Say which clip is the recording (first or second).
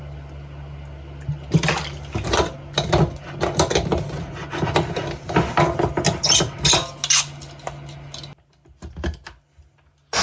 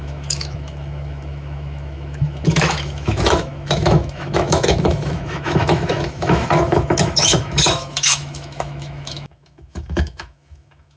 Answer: first